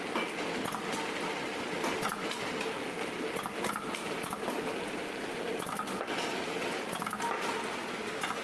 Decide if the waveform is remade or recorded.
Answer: recorded